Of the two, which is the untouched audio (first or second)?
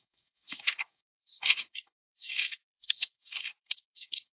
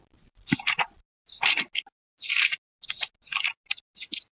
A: second